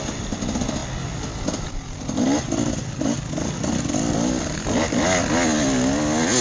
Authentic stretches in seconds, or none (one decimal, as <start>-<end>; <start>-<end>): 0.0-6.4